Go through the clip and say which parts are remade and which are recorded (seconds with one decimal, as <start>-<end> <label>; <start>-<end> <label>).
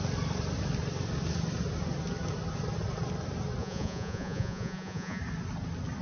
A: 0.0-3.6 recorded; 3.6-5.2 remade; 5.2-6.0 recorded